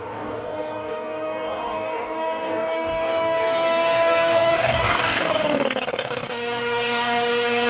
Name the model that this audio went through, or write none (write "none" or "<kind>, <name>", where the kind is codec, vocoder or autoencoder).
codec, DAC